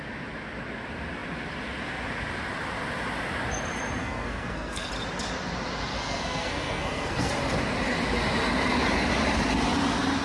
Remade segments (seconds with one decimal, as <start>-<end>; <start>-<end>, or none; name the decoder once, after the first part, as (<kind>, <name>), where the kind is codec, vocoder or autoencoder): 4.0-4.9 (codec, SNAC); 5.9-7.3